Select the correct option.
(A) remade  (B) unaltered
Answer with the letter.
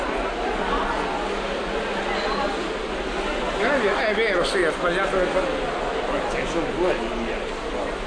B